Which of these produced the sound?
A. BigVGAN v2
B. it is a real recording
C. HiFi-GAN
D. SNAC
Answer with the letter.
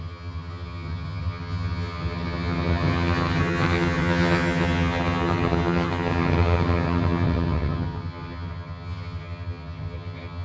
C